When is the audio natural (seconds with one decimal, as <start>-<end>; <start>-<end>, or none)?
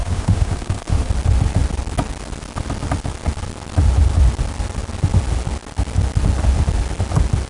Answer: 1.1-7.5